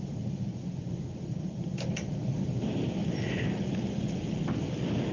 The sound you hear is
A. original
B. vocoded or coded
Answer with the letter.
A